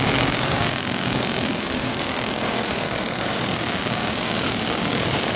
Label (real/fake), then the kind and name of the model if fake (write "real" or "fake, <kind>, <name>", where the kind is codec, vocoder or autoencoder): fake, codec, DAC